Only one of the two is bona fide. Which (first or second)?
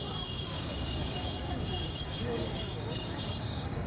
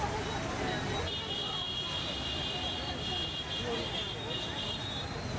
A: second